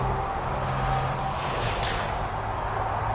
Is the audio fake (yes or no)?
no